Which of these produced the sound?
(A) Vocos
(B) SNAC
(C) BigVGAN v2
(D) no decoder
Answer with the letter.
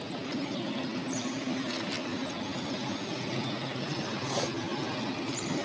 D